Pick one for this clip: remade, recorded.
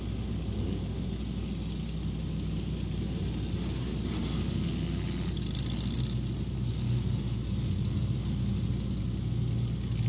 recorded